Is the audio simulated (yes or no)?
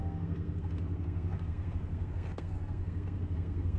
yes